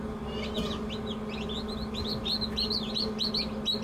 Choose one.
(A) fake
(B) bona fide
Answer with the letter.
B